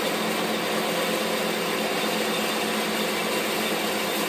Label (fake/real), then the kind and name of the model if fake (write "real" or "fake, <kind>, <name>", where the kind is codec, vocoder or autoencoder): real